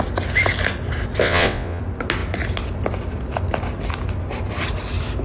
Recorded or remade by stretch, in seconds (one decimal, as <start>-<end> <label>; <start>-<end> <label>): 0.0-1.2 recorded; 1.2-1.8 remade; 1.8-5.2 recorded